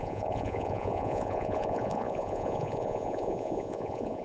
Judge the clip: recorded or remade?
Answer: remade